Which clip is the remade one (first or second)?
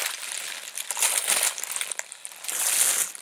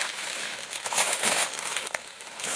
second